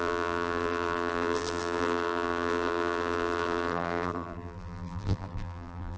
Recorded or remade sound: remade